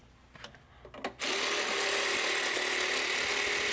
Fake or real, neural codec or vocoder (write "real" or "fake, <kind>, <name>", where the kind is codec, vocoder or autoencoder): real